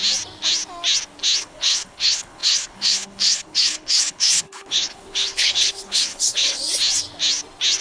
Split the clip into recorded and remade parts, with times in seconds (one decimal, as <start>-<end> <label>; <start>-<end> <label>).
0.0-1.4 recorded; 1.4-6.6 remade; 6.6-7.8 recorded